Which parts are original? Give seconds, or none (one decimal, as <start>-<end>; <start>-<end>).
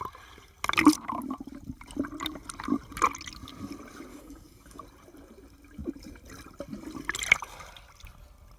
0.0-4.1; 4.8-8.6